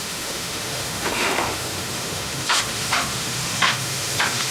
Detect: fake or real fake